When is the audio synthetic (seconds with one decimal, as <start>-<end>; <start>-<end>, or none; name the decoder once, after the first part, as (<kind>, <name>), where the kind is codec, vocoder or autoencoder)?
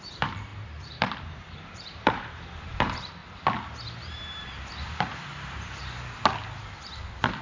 0.0-3.2 (vocoder, BigVGAN v2); 4.0-5.8